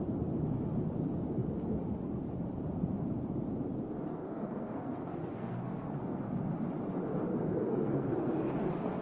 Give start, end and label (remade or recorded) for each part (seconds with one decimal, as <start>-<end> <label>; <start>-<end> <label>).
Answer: 0.0-4.1 recorded; 4.1-6.2 remade; 6.2-7.3 recorded; 7.3-9.0 remade